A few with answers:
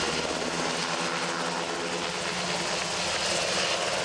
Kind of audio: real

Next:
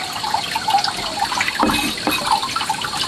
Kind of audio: real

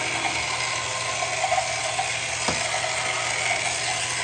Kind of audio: real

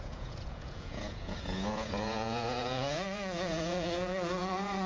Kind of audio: fake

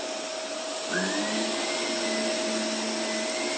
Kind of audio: real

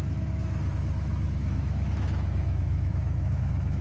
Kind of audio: fake